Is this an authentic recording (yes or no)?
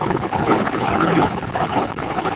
no